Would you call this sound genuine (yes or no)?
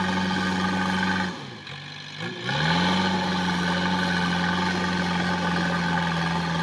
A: yes